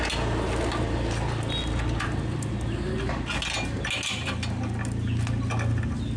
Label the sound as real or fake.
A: real